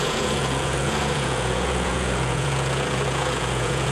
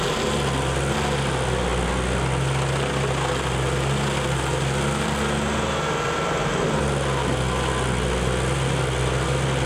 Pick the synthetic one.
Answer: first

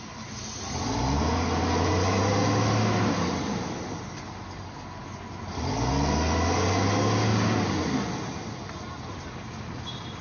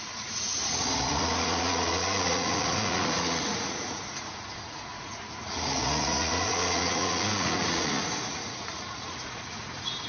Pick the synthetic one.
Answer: second